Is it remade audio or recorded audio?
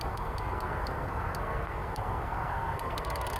remade